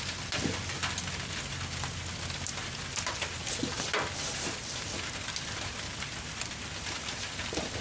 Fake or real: real